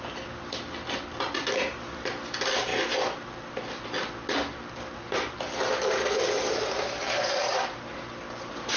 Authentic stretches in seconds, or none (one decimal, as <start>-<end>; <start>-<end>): 0.0-2.7; 3.7-7.0; 7.9-8.8